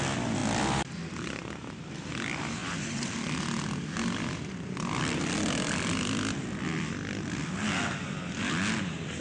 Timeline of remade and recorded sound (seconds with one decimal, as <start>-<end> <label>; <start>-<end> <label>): 0.0-0.4 recorded; 0.4-2.1 remade; 2.1-2.6 recorded; 2.6-5.2 remade; 5.2-9.2 recorded